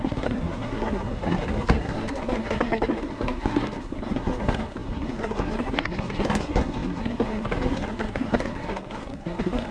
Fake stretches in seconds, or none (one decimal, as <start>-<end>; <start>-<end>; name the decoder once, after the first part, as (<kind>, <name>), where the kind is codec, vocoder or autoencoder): 0.0-9.7 (codec, SNAC)